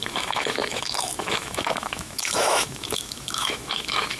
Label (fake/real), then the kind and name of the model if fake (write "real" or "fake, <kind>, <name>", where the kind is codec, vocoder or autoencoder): fake, autoencoder, DAC-VAE